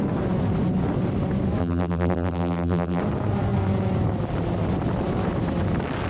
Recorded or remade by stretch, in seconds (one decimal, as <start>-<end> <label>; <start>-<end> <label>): 0.0-1.6 recorded; 1.6-3.0 remade; 3.0-6.1 recorded